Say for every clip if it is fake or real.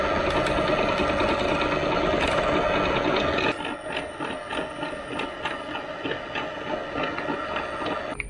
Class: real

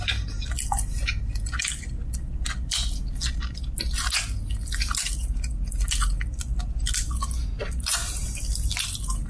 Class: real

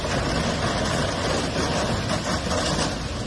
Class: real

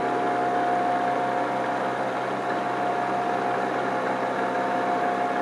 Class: real